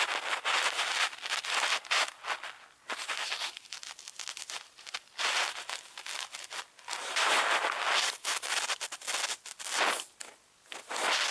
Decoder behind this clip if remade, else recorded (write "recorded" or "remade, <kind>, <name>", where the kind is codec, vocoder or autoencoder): recorded